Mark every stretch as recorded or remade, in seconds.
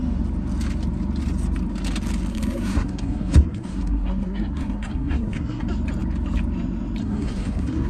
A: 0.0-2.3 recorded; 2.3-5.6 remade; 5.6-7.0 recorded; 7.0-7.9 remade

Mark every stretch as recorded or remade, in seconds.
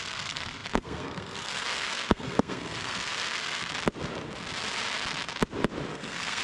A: 0.0-3.7 remade; 3.7-5.9 recorded; 5.9-6.4 remade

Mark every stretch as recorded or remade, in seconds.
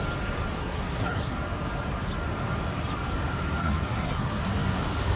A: 0.0-0.6 recorded; 0.6-1.4 remade; 1.4-3.6 recorded; 3.6-4.4 remade; 4.4-5.2 recorded